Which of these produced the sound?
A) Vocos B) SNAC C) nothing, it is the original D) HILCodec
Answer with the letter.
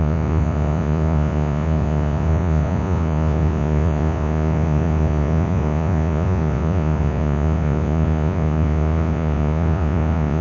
A